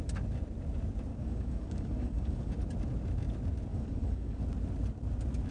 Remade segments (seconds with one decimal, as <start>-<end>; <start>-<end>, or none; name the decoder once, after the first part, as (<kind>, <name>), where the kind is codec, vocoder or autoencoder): 1.1-2.5 (codec, DAC); 3.7-4.4